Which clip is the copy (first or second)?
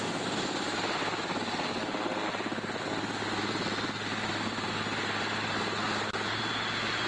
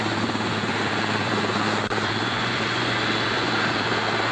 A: second